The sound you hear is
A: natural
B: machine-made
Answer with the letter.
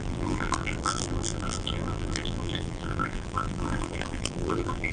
B